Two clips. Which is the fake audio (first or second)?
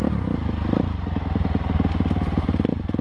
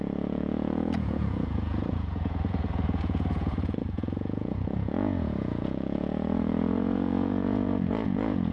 second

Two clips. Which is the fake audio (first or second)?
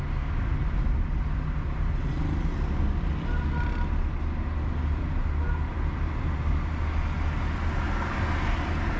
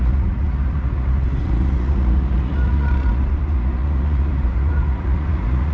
second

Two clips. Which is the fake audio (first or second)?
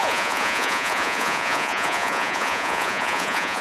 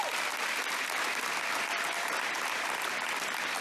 first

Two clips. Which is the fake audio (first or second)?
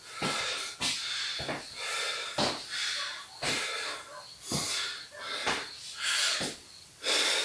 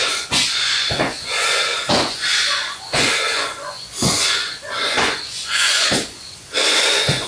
second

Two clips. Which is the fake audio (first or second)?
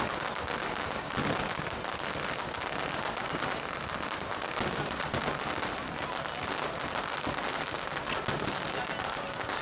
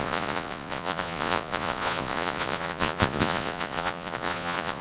second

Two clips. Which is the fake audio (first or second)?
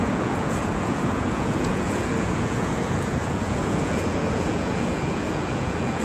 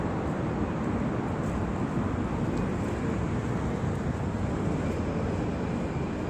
first